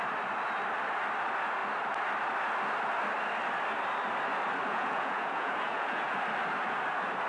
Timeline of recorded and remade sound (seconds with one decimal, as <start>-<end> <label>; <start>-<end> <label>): 0.0-4.7 recorded; 4.7-6.2 remade; 6.2-7.3 recorded